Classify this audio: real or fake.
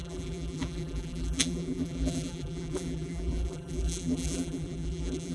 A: fake